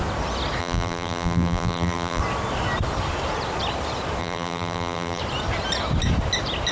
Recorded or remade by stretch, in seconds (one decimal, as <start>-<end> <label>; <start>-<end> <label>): 0.0-0.6 recorded; 0.6-2.2 remade; 2.2-4.2 recorded; 4.2-5.2 remade; 5.2-6.7 recorded